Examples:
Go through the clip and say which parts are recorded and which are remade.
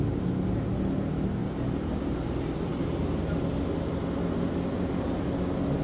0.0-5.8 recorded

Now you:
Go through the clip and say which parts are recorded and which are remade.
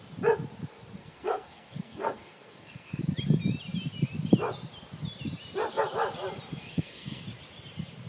0.0-1.0 recorded; 1.0-3.0 remade; 3.0-6.6 recorded; 6.6-7.2 remade; 7.2-8.1 recorded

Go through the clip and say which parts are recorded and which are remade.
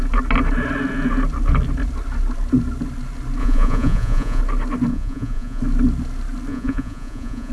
0.0-3.4 recorded; 3.4-4.4 remade; 4.4-4.9 recorded; 4.9-5.6 remade; 5.6-6.5 recorded; 6.5-7.5 remade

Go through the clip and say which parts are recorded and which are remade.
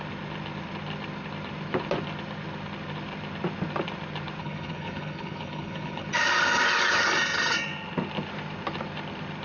0.0-4.4 recorded; 4.4-6.1 remade; 6.1-9.4 recorded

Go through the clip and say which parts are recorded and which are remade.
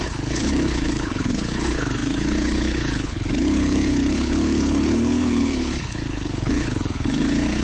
0.0-7.6 remade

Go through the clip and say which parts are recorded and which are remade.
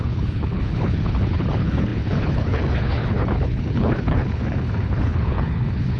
0.0-6.0 remade